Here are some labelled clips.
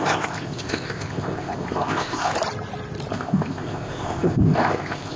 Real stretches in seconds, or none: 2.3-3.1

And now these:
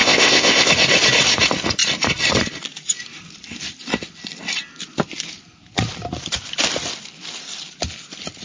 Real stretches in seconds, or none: 0.7-8.4

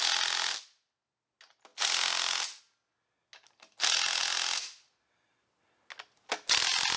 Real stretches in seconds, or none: 0.0-7.0

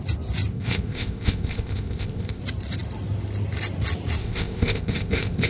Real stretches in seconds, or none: 0.0-0.5; 2.4-4.2

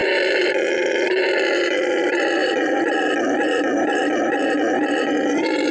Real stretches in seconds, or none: 0.0-5.7

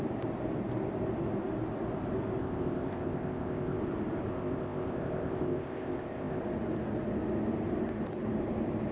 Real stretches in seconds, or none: 0.0-2.4; 3.8-4.3; 6.4-8.9